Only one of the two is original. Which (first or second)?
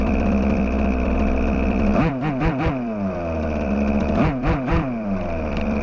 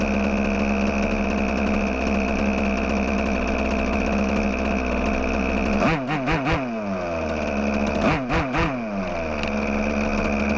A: second